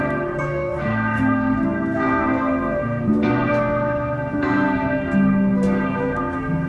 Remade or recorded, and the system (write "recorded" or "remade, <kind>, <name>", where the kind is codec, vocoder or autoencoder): remade, codec, SNAC